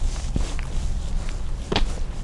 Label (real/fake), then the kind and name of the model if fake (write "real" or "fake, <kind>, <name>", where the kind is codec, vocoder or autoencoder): real